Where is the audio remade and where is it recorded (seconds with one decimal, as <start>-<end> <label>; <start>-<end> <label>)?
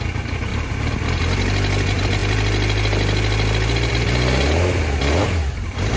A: 0.0-6.0 recorded